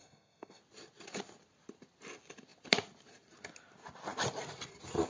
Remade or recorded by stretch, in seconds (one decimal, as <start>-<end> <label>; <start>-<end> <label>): 0.0-0.6 remade; 0.6-5.1 recorded